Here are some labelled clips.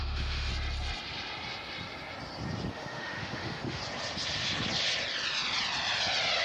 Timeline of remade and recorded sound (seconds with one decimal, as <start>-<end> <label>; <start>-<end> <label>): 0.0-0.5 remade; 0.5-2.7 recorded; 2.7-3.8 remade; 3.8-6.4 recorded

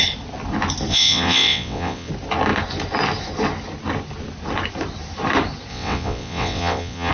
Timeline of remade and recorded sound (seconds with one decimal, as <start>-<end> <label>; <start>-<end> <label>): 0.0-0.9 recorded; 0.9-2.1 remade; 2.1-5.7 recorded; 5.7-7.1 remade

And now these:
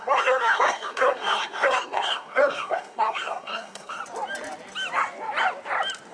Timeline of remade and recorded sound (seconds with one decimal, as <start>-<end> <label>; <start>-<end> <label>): 0.0-4.0 remade; 4.0-6.1 recorded